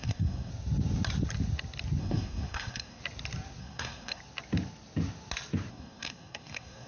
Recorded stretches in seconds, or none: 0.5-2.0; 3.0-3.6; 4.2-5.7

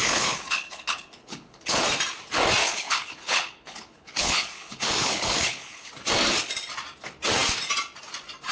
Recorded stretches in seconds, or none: 1.8-2.6; 5.9-8.5

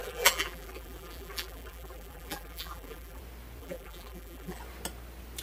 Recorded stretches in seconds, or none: 3.2-3.6; 4.6-5.4

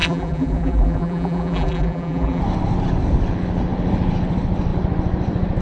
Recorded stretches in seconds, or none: 2.4-5.6

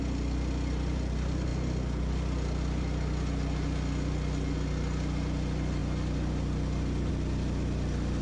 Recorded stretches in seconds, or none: 0.0-8.2

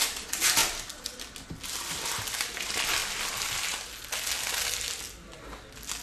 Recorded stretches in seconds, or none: 0.0-6.0